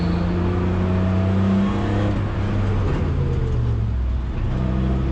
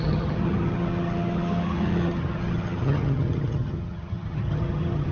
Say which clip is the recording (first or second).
first